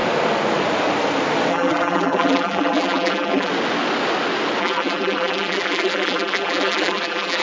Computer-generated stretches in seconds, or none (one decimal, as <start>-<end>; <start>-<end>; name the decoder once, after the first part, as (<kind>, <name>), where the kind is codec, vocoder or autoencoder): 1.5-3.5 (vocoder, BigVGAN v2); 4.6-7.4